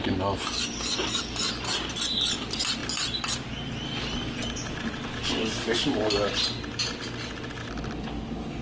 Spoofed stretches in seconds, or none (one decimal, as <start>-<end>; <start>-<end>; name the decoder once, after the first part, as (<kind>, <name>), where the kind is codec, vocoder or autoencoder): none